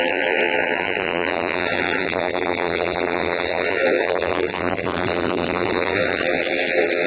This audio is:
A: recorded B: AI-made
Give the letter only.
B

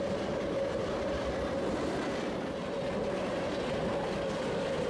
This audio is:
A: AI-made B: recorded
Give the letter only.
B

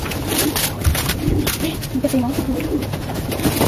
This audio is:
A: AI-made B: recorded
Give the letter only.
B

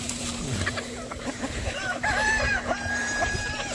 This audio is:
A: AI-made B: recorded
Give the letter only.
A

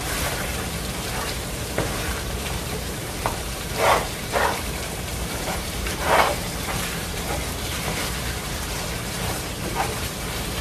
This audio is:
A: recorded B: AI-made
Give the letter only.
B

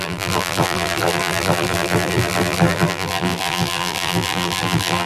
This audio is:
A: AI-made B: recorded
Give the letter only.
A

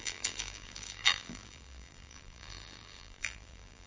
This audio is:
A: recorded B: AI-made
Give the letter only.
B